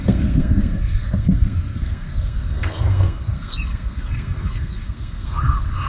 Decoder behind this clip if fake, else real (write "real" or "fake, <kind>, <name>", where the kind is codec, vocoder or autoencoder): fake, codec, SNAC